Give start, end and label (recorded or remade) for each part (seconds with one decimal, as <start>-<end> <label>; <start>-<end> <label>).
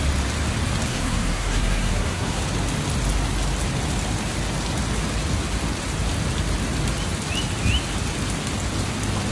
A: 0.0-0.9 recorded; 0.9-2.4 remade; 2.4-9.3 recorded